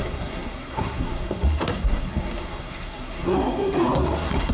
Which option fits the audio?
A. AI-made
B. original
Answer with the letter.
A